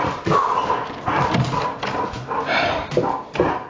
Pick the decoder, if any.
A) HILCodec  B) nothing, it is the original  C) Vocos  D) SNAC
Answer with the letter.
B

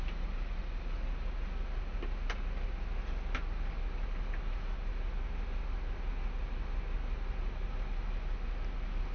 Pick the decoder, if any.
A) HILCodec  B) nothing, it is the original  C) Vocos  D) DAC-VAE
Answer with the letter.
B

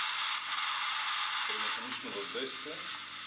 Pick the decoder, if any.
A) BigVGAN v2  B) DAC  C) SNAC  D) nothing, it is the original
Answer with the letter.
D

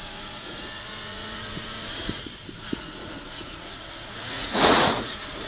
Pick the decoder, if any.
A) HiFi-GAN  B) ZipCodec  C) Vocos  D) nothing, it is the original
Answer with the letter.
C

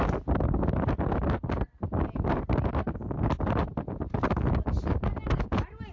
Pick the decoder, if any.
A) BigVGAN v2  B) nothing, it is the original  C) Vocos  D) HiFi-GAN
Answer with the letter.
B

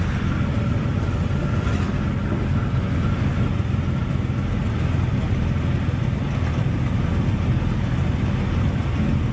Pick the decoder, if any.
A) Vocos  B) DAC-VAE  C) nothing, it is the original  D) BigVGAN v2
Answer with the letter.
C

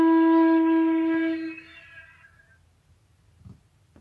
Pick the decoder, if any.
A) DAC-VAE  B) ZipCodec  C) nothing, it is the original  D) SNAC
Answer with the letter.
C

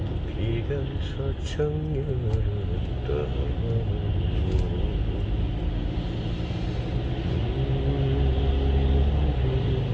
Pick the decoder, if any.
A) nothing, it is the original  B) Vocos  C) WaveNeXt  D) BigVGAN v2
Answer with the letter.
A